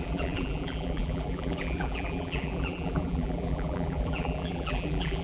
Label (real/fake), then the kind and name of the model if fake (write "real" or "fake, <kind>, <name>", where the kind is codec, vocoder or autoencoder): fake, vocoder, BigVGAN v2